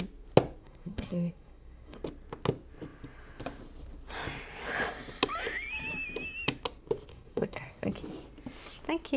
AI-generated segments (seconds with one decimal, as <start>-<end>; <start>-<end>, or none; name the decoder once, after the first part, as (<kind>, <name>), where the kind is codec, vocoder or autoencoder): 0.6-2.0 (codec, SNAC); 7.1-7.9